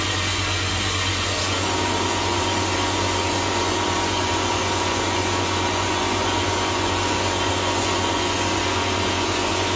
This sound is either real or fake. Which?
fake